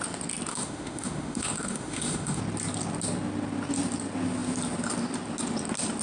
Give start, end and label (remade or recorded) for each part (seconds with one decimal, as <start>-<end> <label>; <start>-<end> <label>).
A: 0.0-0.5 recorded; 0.5-2.4 remade; 2.4-6.0 recorded